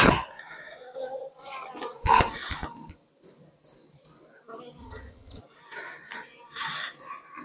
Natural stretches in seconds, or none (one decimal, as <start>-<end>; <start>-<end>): 0.0-4.8; 5.4-7.4